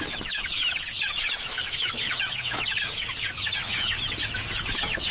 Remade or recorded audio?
remade